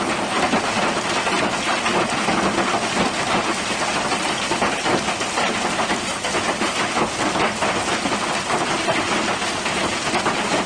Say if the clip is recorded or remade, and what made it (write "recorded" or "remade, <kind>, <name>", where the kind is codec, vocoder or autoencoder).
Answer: recorded